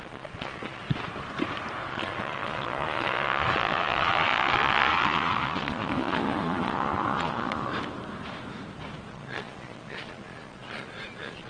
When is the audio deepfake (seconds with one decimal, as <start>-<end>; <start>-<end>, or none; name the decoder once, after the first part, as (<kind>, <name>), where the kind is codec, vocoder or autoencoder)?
0.0-0.8 (vocoder, Vocos); 1.9-7.7; 9.1-11.5